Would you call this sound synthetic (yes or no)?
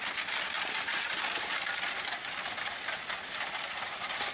no